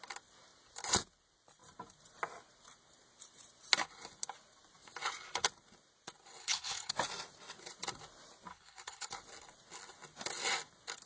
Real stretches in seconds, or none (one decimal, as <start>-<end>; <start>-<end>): 0.0-6.4; 6.9-8.5; 9.1-11.1